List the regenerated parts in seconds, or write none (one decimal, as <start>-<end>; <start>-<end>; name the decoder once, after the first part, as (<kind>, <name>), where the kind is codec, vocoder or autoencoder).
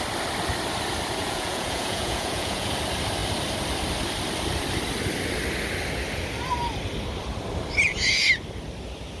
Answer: 1.2-2.7 (vocoder, Vocos)